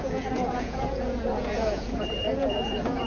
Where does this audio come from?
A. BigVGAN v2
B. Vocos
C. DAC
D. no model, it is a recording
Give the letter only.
B